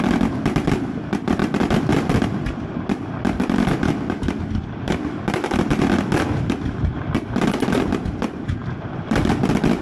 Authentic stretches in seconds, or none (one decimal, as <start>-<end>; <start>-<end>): 0.0-1.4; 5.8-8.6; 9.2-9.8